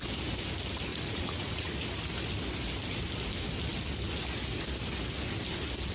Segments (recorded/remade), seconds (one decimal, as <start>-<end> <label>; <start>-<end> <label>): 0.0-0.9 recorded; 0.9-1.7 remade; 1.7-5.9 recorded